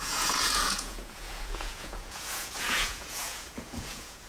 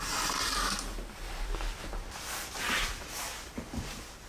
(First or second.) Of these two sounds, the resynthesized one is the first